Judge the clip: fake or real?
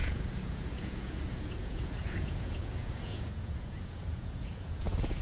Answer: fake